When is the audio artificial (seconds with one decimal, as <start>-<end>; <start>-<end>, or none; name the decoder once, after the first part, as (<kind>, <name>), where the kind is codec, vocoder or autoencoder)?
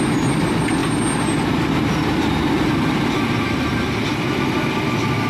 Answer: none